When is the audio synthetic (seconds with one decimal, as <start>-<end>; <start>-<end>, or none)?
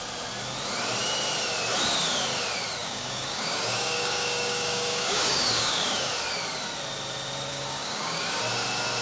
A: 2.8-6.1; 7.5-8.4